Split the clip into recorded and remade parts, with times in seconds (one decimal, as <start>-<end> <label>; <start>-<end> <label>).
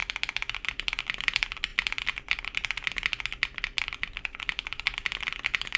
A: 0.0-0.9 recorded; 0.9-1.7 remade; 1.7-3.8 recorded; 3.8-5.8 remade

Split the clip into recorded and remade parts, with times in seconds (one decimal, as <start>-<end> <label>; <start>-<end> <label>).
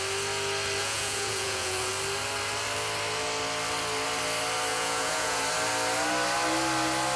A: 0.0-0.8 recorded; 0.8-1.9 remade; 1.9-4.7 recorded; 4.7-5.4 remade; 5.4-7.2 recorded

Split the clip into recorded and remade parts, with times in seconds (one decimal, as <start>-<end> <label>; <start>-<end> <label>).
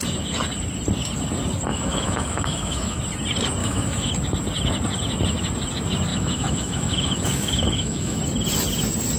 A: 0.0-1.7 recorded; 1.7-3.0 remade; 3.0-3.6 recorded; 3.6-4.1 remade; 4.1-6.1 recorded; 6.1-8.2 remade; 8.2-9.2 recorded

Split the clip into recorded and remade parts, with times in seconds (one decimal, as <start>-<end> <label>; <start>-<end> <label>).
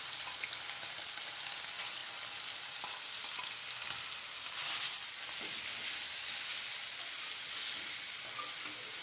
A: 0.0-9.0 recorded